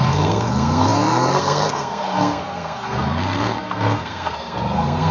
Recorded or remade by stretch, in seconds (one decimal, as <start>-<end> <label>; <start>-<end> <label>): 0.0-5.1 remade